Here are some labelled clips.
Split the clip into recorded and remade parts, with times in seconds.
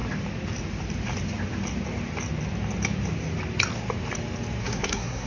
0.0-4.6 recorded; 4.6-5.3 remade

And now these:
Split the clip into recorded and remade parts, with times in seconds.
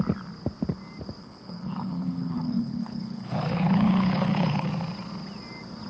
0.0-1.2 recorded; 1.2-4.7 remade; 4.7-5.9 recorded